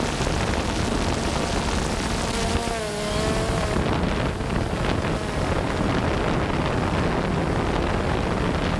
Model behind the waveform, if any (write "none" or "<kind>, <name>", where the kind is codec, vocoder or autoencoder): none